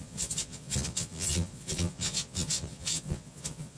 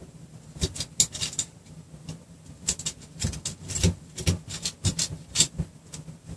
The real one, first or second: second